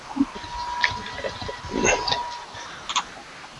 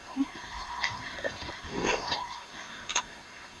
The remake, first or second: second